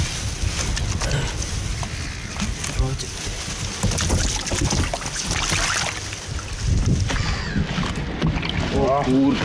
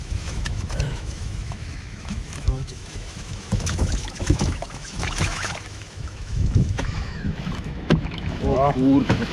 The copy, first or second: second